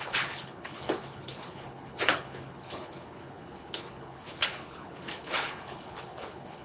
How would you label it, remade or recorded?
remade